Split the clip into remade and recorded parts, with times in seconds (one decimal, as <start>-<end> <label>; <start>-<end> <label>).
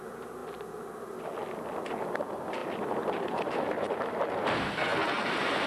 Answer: 0.0-1.4 recorded; 1.4-1.9 remade; 1.9-2.6 recorded; 2.6-4.3 remade; 4.3-5.7 recorded